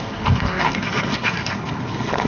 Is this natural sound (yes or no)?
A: no